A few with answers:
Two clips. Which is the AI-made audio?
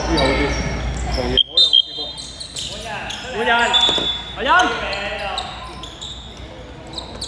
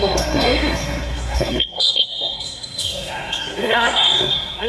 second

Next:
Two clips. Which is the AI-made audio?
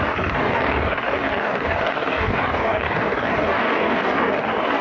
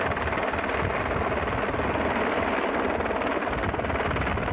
first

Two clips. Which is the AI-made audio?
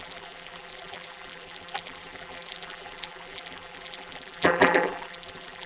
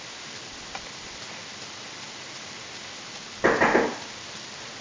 first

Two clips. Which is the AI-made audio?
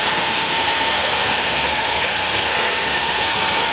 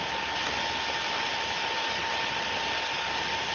first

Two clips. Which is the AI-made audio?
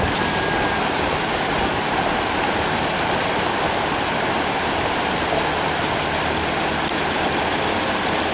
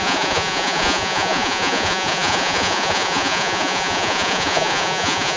second